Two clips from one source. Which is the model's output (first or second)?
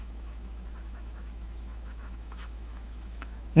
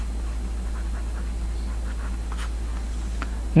first